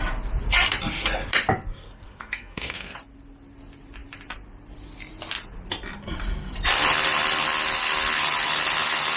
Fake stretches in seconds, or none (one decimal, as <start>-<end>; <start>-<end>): 1.7-2.9